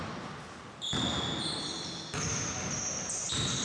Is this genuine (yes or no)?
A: yes